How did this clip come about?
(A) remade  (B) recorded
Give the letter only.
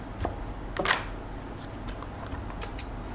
B